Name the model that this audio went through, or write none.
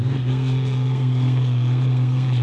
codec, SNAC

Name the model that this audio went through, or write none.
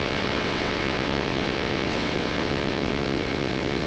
vocoder, WaveNeXt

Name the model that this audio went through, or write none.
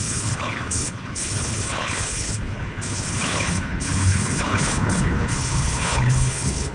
codec, HILCodec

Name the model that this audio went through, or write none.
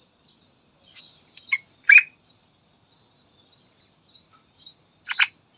none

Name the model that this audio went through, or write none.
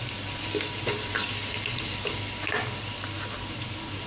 none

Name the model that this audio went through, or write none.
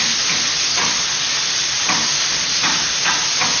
none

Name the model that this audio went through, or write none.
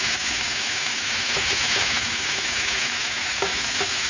autoencoder, DAC-VAE